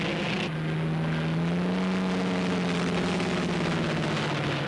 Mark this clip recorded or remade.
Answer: recorded